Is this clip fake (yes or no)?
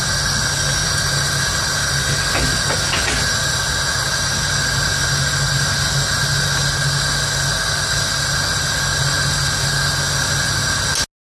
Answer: no